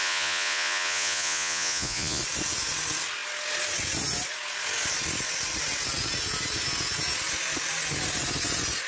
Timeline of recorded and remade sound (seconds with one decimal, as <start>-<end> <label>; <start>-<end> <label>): 0.0-2.2 remade; 2.2-8.9 recorded